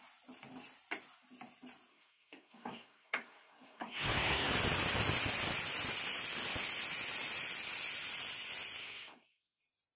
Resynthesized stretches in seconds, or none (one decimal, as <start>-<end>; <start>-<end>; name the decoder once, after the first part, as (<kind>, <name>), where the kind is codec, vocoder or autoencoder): 1.9-4.5 (codec, SNAC); 8.8-9.6